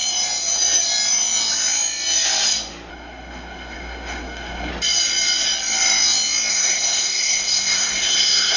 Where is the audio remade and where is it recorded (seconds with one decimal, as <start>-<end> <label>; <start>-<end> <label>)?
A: 0.0-2.9 recorded; 2.9-4.7 remade; 4.7-6.5 recorded; 6.5-8.6 remade